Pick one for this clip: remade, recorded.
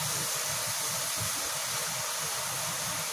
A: recorded